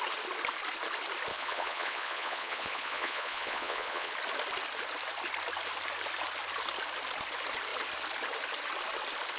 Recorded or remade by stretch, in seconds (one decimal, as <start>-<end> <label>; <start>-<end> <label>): 0.0-1.3 recorded; 1.3-4.1 remade; 4.1-9.4 recorded